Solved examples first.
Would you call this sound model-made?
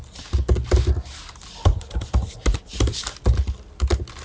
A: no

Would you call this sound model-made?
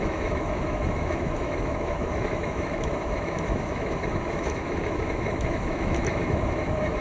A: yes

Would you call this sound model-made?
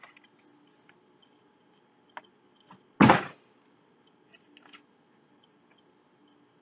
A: no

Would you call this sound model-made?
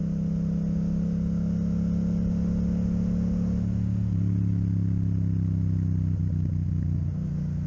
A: no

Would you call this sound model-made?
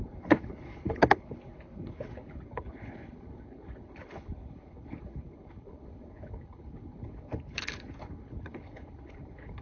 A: yes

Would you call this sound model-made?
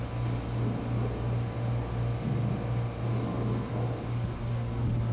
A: no